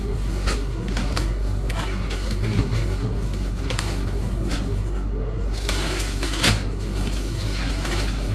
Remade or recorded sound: remade